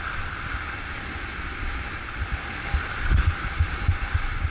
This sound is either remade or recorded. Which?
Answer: recorded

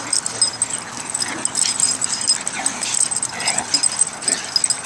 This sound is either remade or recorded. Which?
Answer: recorded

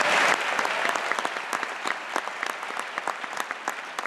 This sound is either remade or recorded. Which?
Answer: recorded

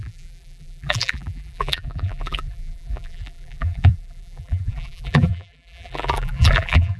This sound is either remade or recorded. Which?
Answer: remade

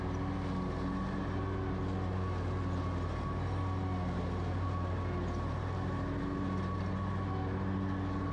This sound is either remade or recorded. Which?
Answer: recorded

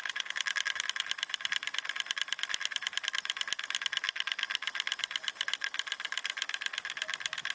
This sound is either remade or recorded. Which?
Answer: recorded